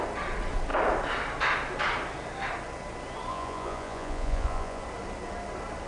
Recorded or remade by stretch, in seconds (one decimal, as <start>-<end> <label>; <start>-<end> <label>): 0.0-3.3 recorded; 3.3-4.8 remade; 4.8-5.9 recorded